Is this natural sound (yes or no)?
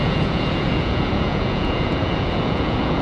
no